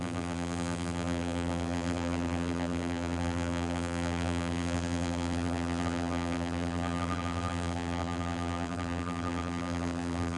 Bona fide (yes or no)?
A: no